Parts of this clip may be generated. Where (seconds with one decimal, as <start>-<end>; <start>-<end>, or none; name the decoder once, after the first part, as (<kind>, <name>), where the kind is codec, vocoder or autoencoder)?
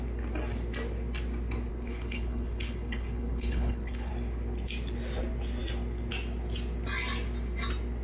1.7-4.1 (codec, HILCodec)